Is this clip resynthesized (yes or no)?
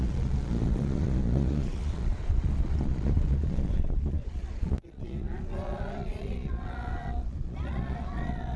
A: yes